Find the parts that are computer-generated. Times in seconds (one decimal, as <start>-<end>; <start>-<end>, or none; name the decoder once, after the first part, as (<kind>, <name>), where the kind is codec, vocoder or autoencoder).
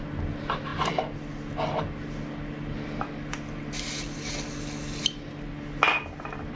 none